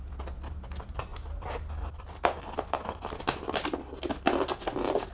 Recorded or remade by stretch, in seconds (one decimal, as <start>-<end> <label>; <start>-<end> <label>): 0.0-5.1 recorded